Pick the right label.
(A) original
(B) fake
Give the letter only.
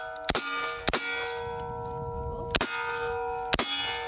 A